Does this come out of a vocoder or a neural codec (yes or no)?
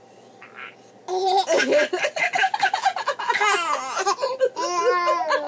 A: no